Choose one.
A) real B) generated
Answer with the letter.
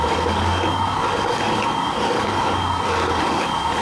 B